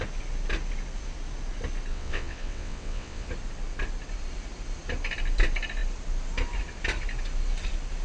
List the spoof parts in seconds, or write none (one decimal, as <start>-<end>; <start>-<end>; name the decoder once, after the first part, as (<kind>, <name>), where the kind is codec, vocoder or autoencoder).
1.9-3.3 (vocoder, WaveNeXt)